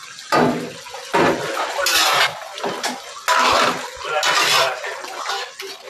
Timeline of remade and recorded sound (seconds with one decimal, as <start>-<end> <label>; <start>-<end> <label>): 0.0-5.9 recorded